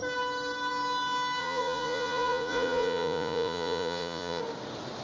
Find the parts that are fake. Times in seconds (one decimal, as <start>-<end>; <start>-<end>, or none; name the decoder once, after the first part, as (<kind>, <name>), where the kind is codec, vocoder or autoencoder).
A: 1.4-4.4 (vocoder, Vocos)